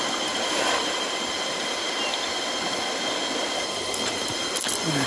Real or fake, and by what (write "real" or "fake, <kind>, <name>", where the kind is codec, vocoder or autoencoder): real